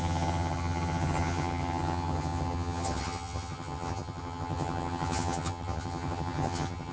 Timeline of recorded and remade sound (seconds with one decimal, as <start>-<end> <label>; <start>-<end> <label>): 0.0-6.9 remade